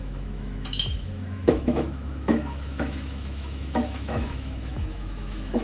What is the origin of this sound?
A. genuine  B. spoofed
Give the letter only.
B